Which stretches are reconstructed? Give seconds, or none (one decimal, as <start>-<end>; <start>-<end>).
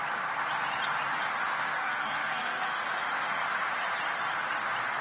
1.5-2.7